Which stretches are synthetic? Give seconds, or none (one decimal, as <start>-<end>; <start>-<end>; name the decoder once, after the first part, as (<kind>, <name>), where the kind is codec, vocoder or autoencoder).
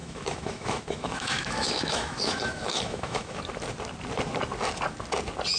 0.0-3.4 (autoencoder, DAC-VAE)